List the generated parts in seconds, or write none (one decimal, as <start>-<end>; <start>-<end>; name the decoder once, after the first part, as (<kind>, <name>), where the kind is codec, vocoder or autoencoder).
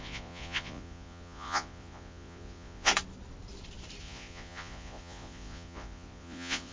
0.0-2.9 (vocoder, Vocos); 4.0-6.7